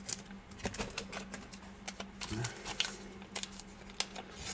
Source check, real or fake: real